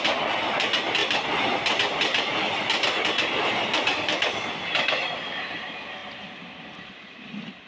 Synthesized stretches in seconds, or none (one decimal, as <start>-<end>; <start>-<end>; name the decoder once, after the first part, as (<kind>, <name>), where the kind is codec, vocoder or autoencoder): none